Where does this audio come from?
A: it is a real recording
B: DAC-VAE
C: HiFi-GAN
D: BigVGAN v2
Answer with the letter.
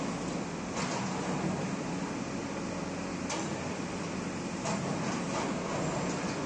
A